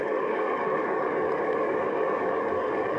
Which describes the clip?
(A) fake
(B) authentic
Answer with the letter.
A